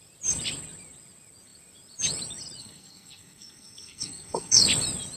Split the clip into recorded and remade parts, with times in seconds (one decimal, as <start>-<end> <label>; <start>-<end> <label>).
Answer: 0.0-2.6 recorded; 2.6-4.6 remade; 4.6-5.2 recorded